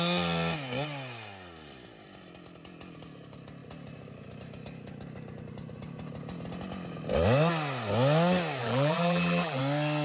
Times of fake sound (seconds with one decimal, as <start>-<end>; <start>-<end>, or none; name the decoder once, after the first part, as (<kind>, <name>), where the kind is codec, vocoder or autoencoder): 8.6-9.6 (vocoder, BigVGAN v2)